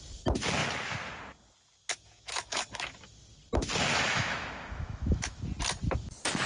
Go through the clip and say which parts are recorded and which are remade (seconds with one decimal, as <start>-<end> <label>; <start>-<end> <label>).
0.0-1.9 recorded; 1.9-3.1 remade; 3.1-3.9 recorded; 3.9-5.4 remade; 5.4-6.5 recorded